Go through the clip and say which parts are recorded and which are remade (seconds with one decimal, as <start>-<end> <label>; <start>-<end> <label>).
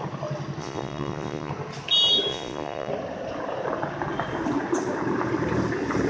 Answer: 0.0-0.6 recorded; 0.6-1.5 remade; 1.5-2.3 recorded; 2.3-2.9 remade; 2.9-6.1 recorded